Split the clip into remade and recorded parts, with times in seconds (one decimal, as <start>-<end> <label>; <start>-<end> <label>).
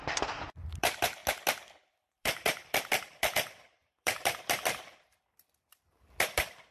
0.0-1.2 remade; 1.2-1.9 recorded; 1.9-6.7 remade